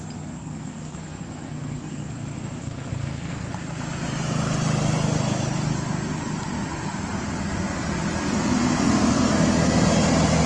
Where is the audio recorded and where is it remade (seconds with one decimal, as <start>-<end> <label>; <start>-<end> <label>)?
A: 0.0-0.4 recorded; 0.4-2.1 remade; 2.1-2.6 recorded; 2.6-3.5 remade; 3.5-10.5 recorded